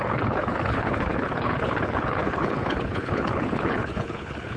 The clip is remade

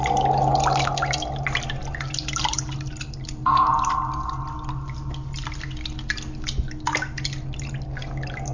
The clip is recorded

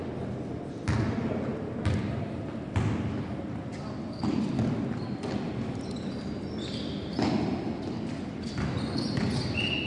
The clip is recorded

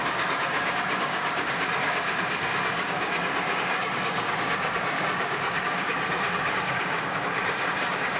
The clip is remade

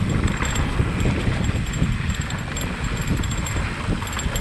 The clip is recorded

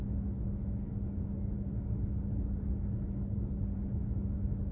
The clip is recorded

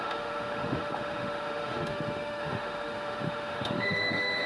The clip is remade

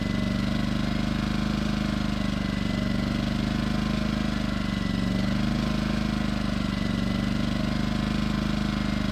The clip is recorded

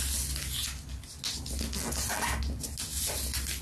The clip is recorded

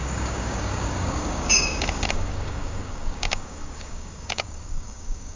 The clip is remade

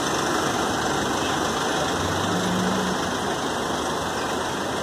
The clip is recorded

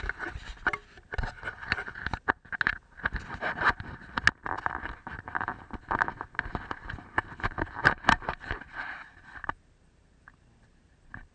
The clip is recorded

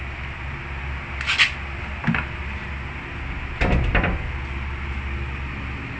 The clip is recorded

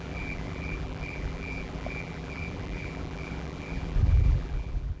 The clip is remade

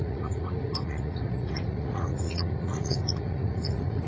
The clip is remade